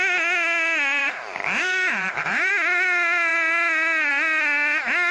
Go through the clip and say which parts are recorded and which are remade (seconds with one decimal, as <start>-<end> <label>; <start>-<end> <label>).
0.0-1.0 recorded; 1.0-2.5 remade; 2.5-5.1 recorded